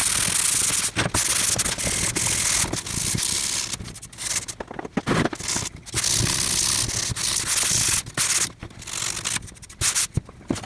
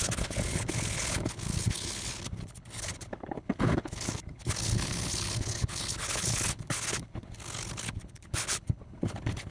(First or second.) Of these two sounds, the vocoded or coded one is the second